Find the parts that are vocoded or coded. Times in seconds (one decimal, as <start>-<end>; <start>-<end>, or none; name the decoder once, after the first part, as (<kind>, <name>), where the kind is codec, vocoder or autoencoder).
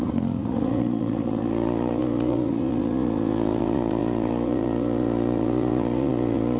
0.0-6.6 (vocoder, Vocos)